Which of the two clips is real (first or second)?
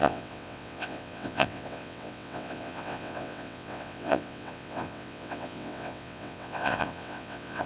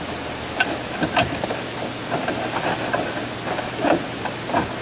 second